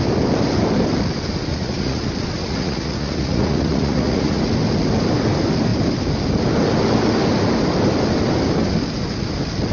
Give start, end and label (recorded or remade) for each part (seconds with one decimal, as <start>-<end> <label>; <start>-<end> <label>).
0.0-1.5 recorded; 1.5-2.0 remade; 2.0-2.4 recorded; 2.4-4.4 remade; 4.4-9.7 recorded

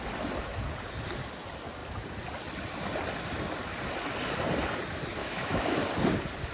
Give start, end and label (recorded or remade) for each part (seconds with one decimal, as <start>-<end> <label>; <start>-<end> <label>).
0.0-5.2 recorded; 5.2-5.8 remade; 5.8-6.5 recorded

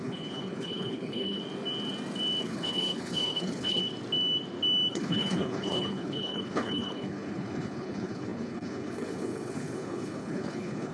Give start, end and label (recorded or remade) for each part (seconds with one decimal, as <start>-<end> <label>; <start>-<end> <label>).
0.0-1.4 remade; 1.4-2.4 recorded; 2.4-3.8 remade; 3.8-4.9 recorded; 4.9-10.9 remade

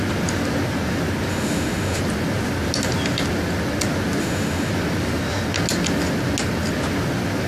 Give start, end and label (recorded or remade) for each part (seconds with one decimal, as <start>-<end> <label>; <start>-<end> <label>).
0.0-1.3 recorded; 1.3-2.0 remade; 2.0-4.2 recorded; 4.2-4.7 remade; 4.7-7.5 recorded

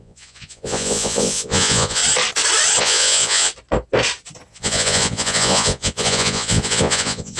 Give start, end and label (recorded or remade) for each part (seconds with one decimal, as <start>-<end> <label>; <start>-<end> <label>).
0.0-2.0 remade; 2.0-2.8 recorded; 2.8-3.5 remade; 3.5-4.5 recorded; 4.5-7.4 remade